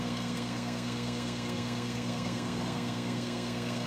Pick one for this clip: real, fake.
fake